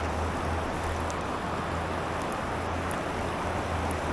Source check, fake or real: real